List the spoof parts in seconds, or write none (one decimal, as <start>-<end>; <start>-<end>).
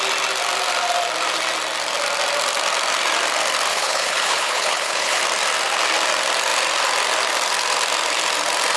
3.7-5.2